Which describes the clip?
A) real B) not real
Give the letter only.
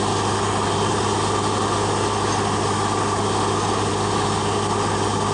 A